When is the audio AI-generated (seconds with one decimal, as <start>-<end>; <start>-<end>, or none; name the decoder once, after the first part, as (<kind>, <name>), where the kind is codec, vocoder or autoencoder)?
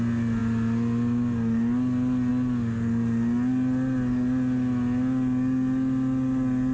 none